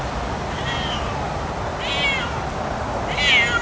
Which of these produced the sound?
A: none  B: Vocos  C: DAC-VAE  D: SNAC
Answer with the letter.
A